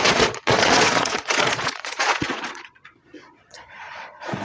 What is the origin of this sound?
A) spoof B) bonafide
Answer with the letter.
A